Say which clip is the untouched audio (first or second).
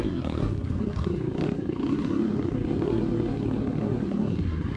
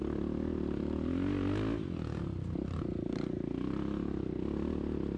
second